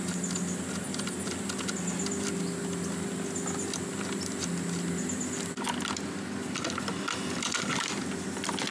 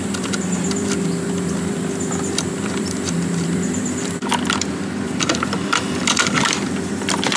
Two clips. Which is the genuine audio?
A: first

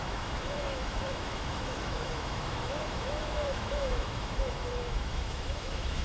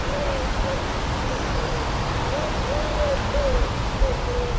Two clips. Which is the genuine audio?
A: second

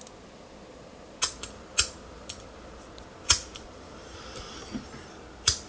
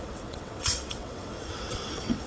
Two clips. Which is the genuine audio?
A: first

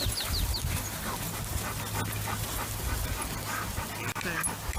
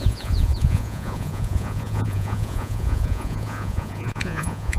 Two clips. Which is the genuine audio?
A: first